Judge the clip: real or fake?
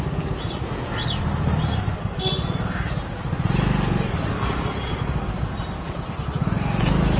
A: real